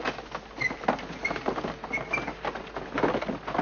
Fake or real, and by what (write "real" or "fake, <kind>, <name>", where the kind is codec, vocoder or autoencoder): real